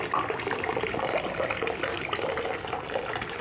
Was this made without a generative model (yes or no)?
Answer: yes